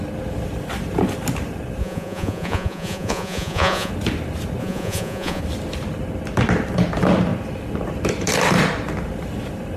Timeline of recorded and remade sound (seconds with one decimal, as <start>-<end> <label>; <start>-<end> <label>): 0.0-1.8 recorded; 1.8-3.9 remade; 3.9-4.6 recorded; 4.6-5.4 remade; 5.4-9.8 recorded